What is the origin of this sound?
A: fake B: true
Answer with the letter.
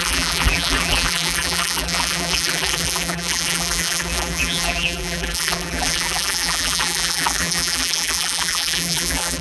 A